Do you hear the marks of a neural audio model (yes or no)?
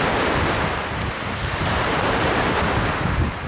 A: yes